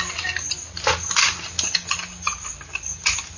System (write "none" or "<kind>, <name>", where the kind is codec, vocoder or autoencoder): none